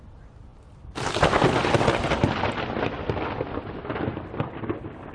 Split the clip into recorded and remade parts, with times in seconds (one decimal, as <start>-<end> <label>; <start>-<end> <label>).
0.0-5.1 recorded